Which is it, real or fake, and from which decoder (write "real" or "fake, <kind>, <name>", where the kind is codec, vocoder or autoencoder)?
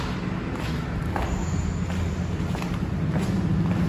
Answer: real